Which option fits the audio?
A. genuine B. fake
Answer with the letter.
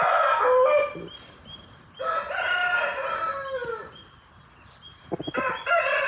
A